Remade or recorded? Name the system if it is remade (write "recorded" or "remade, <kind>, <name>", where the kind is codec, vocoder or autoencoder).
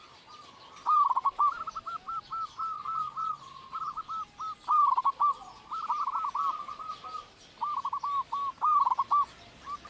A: recorded